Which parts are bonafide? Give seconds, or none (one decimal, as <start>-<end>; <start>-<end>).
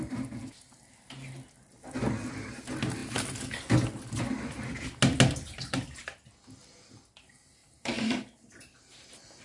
0.0-7.6; 8.8-9.4